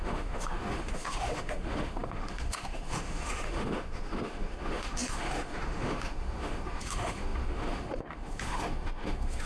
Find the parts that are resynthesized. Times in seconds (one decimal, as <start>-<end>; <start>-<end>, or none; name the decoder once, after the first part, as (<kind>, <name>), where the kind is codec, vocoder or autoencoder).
0.0-9.5 (autoencoder, DAC-VAE)